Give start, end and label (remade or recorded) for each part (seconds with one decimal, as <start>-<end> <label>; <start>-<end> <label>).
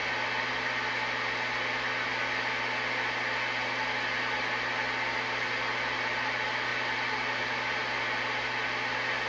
0.0-9.3 recorded